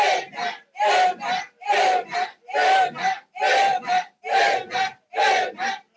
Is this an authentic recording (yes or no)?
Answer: yes